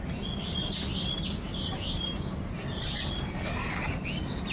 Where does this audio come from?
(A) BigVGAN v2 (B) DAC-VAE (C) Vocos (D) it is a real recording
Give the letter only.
D